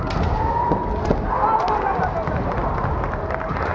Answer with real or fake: real